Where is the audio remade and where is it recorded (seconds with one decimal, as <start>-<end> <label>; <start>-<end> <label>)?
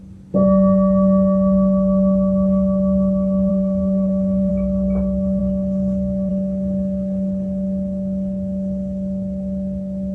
0.0-3.5 recorded; 3.5-4.5 remade; 4.5-10.1 recorded